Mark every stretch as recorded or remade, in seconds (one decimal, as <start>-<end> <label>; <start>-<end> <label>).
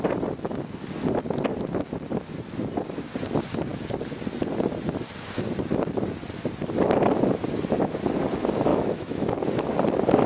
0.0-8.7 recorded; 8.7-9.3 remade; 9.3-10.3 recorded